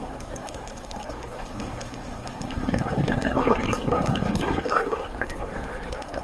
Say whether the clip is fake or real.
fake